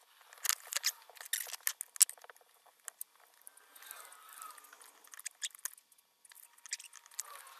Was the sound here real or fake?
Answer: real